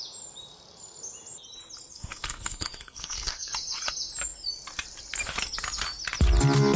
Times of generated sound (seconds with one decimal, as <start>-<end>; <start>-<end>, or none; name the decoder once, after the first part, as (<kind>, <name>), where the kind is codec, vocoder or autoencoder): 1.9-3.5 (codec, SNAC)